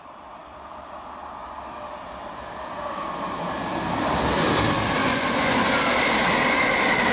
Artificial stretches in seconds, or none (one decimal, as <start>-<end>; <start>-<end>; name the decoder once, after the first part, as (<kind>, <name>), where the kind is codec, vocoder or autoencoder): 5.0-5.6 (vocoder, Vocos)

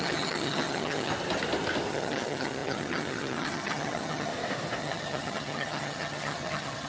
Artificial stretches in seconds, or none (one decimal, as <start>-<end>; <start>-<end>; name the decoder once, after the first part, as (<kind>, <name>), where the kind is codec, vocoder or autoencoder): 0.0-1.1 (vocoder, HiFi-GAN); 1.9-4.3; 4.8-6.9

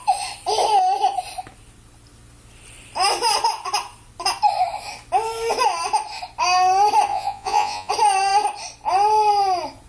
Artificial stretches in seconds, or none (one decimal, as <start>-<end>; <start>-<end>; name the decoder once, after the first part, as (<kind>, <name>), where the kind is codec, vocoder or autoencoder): 7.1-7.9 (vocoder, Vocos)

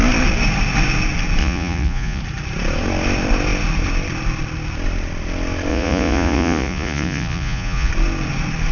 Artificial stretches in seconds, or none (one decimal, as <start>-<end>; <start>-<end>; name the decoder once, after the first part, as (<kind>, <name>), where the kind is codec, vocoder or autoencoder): 1.4-2.2 (vocoder, Vocos); 5.7-7.9

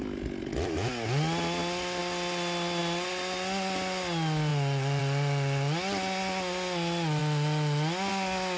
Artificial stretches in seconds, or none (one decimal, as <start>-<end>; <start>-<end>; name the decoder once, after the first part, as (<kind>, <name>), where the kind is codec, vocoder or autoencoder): none

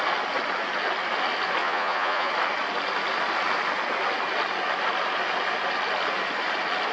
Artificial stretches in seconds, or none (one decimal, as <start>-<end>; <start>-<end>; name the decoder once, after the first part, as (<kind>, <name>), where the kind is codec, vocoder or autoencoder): 1.6-2.3 (vocoder, Vocos)

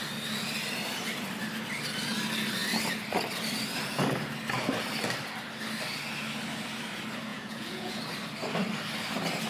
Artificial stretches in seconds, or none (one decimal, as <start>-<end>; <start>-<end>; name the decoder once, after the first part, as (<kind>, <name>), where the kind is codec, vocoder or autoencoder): 7.3-8.0 (vocoder, Vocos)

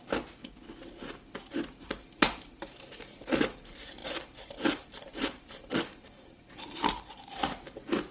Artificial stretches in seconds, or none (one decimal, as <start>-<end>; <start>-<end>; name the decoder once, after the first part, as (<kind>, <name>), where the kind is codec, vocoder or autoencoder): 0.0-0.4 (vocoder, BigVGAN v2); 1.8-8.1